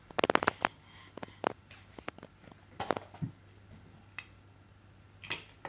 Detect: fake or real real